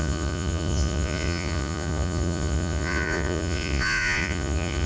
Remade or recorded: remade